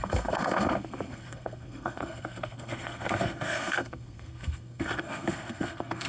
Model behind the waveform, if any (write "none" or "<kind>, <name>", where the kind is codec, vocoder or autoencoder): codec, SNAC